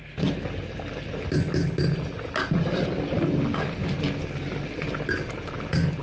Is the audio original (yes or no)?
yes